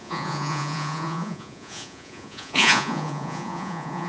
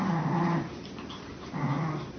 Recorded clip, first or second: second